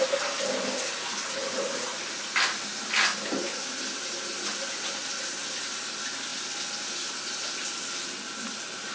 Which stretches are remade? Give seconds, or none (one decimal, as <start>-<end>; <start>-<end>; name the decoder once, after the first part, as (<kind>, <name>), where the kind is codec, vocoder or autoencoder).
none